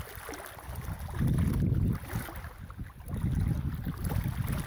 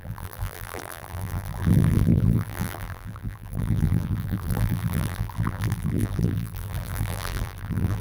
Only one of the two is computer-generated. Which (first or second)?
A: second